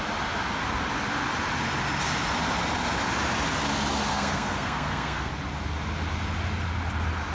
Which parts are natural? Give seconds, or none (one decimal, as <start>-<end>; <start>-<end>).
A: 0.0-4.1; 5.3-7.3